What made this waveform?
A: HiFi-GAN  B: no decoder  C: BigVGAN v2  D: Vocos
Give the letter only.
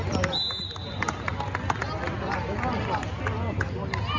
B